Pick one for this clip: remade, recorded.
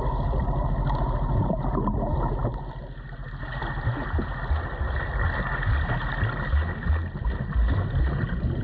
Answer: recorded